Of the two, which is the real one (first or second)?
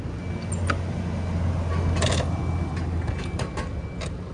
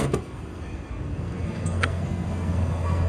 first